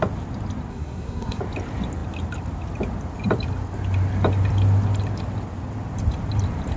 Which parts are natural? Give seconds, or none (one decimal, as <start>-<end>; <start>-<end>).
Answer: 0.0-0.7; 1.4-6.8